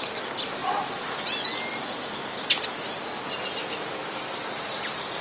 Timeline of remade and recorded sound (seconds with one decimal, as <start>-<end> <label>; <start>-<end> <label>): 0.0-3.6 recorded; 3.6-4.2 remade; 4.2-5.2 recorded

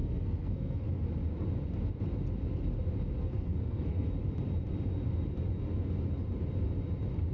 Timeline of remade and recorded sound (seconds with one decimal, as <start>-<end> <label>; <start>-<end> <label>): 0.0-1.1 remade; 1.1-3.2 recorded; 3.2-4.1 remade; 4.1-7.3 recorded

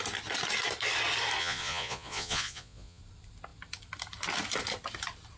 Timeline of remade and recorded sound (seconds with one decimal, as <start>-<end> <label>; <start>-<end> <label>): 0.0-1.4 recorded; 1.4-3.0 remade; 3.0-5.4 recorded